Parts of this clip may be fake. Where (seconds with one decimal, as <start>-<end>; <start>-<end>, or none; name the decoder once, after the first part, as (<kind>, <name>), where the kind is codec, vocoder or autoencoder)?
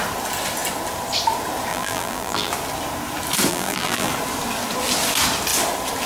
1.7-2.5 (vocoder, BigVGAN v2); 3.5-4.1